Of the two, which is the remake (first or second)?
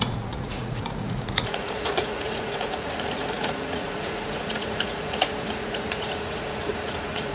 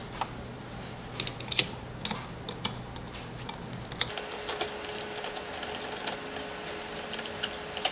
first